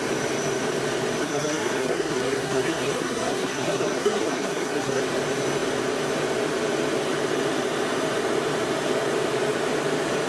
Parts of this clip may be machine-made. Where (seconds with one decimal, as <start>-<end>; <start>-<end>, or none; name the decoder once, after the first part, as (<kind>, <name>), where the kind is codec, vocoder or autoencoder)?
1.2-5.0 (codec, SNAC)